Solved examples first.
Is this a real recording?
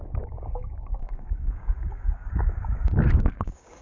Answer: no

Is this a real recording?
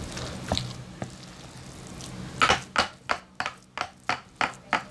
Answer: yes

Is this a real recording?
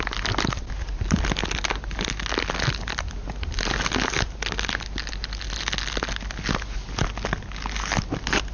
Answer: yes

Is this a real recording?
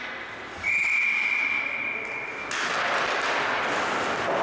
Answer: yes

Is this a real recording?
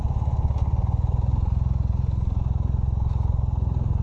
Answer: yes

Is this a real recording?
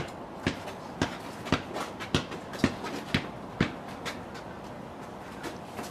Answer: yes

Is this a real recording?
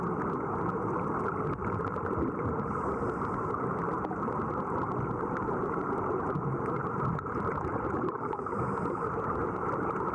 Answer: no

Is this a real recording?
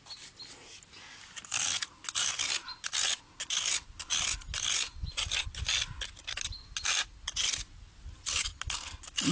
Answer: yes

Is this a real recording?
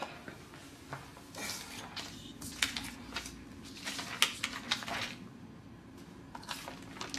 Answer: yes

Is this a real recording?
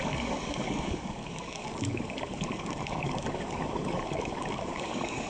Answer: no